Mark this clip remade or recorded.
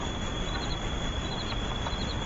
recorded